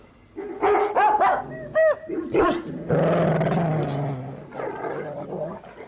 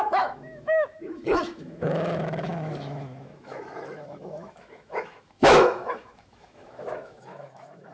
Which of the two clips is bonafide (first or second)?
first